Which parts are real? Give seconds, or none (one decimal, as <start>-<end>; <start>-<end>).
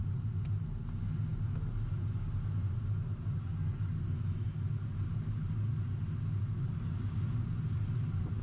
0.0-8.4